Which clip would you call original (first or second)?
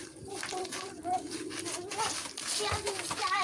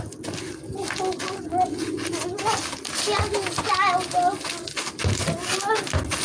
second